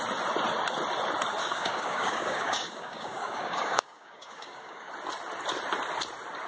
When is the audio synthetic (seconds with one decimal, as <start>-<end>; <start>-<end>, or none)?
1.4-4.9

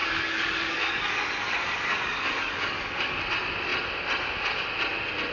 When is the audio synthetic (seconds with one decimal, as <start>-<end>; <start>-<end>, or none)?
0.0-3.2